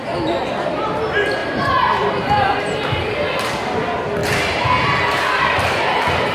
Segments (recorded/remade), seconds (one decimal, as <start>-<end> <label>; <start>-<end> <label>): 0.0-1.4 recorded; 1.4-2.6 remade; 2.6-4.2 recorded; 4.2-5.8 remade; 5.8-6.3 recorded